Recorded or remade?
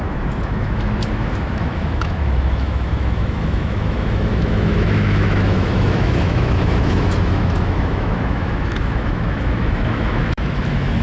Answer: remade